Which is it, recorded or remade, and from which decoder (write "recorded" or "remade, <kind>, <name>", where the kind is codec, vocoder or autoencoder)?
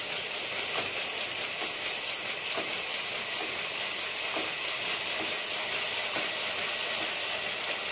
recorded